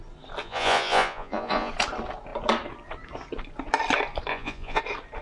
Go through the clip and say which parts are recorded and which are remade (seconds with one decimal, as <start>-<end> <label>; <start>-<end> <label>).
0.0-0.4 recorded; 0.4-1.7 remade; 1.7-4.3 recorded; 4.3-4.8 remade; 4.8-5.2 recorded